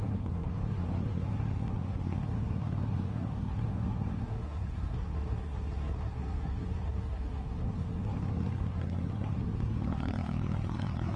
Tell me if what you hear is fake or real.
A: fake